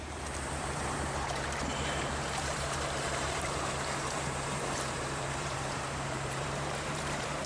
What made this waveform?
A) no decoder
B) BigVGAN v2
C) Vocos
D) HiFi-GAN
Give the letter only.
B